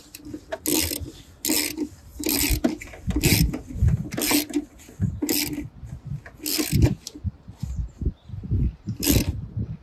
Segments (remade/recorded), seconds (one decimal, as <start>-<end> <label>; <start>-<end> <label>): 0.0-9.8 recorded